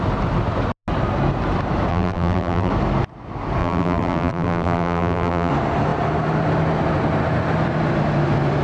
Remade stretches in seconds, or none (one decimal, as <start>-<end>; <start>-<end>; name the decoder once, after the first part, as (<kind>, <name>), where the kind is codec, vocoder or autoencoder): 1.9-2.7 (vocoder, BigVGAN v2); 3.6-5.5